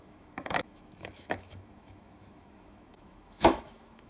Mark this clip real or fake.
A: fake